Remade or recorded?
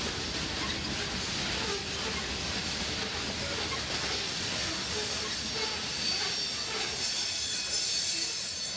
recorded